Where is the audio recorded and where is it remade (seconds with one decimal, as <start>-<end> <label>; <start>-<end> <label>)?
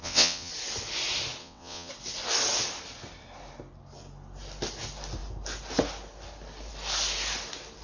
0.0-0.5 remade; 0.5-1.4 recorded; 1.4-1.9 remade; 1.9-7.8 recorded